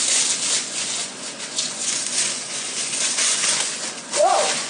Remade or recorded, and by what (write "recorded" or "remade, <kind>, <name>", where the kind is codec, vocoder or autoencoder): remade, vocoder, Vocos